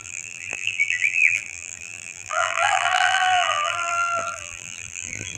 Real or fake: fake